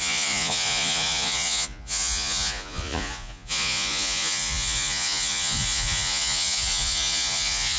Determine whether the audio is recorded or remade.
remade